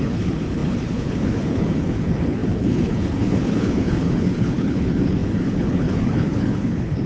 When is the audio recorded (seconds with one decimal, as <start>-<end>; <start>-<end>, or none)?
none